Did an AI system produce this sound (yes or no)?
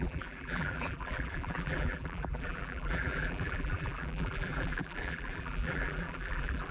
yes